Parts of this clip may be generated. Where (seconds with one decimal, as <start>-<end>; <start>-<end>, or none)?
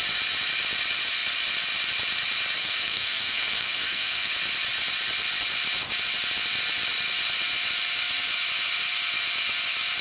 2.6-4.3